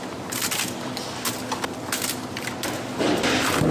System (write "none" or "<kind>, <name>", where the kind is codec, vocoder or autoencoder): none